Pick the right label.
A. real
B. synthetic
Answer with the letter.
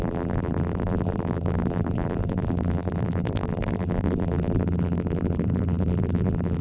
B